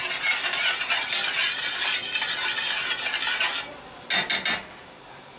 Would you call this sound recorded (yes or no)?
yes